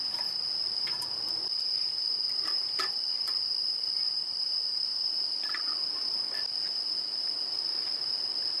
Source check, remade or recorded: remade